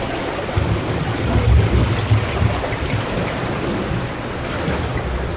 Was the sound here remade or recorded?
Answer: recorded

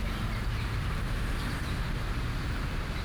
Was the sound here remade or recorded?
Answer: recorded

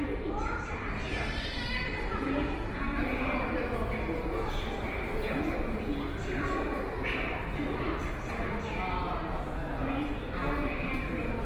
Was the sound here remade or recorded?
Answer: recorded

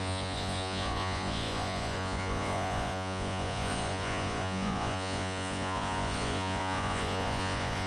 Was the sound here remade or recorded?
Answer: remade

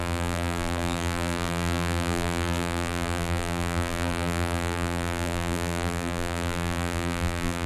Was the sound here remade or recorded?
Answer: remade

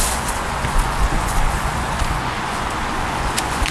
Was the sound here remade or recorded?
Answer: remade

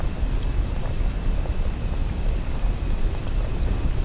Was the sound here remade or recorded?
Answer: recorded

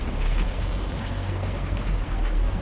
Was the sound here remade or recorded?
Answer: remade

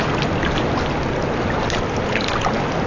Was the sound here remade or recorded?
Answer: recorded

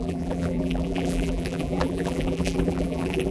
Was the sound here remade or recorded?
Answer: remade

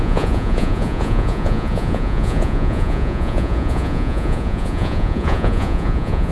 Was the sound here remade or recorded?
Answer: remade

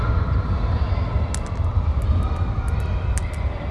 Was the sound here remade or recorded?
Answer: recorded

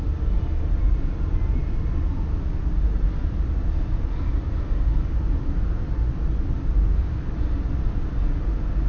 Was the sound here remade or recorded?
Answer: recorded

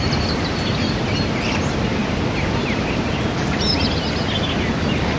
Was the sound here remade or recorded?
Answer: recorded